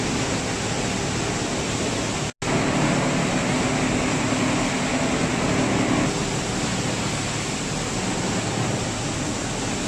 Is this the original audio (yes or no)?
yes